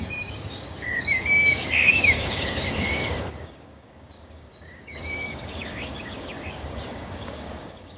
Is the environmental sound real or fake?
fake